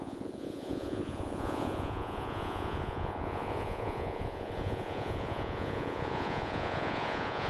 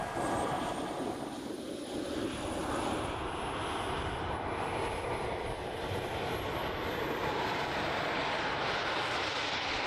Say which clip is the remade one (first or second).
first